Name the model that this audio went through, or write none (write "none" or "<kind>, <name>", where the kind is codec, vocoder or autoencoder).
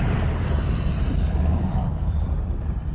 vocoder, BigVGAN v2